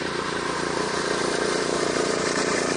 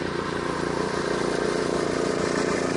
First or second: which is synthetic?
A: first